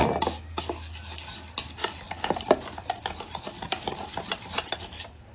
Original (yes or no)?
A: yes